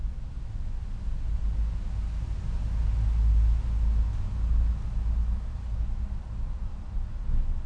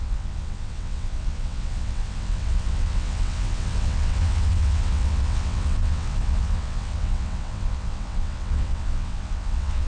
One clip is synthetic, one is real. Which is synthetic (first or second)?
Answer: second